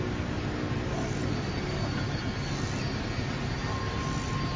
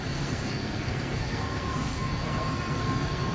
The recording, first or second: first